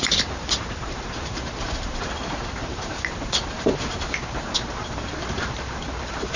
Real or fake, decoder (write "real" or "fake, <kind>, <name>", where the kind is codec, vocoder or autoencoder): fake, vocoder, BigVGAN v2